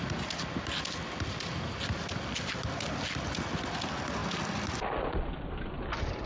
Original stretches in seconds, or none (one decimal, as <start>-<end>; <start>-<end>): 0.0-6.3